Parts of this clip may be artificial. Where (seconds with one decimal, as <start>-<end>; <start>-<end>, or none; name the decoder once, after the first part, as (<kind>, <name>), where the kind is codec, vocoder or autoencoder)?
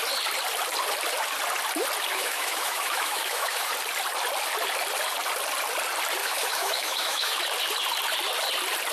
2.1-3.7 (autoencoder, DAC-VAE); 6.2-7.4